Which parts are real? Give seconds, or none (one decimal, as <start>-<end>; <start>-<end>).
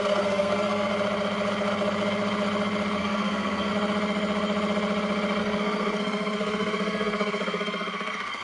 0.9-3.0; 3.7-5.4